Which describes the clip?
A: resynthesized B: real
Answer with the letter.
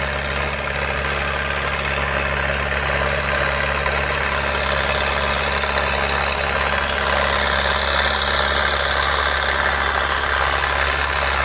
B